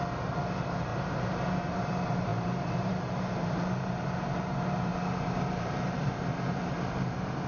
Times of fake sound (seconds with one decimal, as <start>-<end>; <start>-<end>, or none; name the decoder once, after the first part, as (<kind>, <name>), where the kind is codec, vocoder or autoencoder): 0.0-0.9 (vocoder, BigVGAN v2); 1.7-4.9; 5.5-7.5